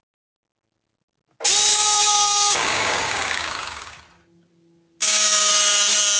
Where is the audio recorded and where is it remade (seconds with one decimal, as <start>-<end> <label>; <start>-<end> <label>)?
0.0-1.7 recorded; 1.7-4.0 remade; 4.0-5.0 recorded; 5.0-5.5 remade; 5.5-6.2 recorded